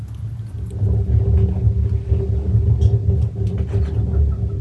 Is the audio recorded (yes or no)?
yes